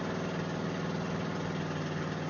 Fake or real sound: real